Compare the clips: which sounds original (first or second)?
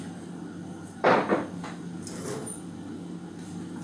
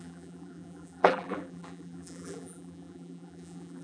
first